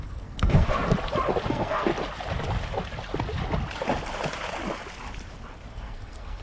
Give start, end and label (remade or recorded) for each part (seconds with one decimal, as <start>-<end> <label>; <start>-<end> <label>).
0.0-0.8 remade; 0.8-1.5 recorded; 1.5-1.9 remade; 1.9-5.7 recorded; 5.7-6.4 remade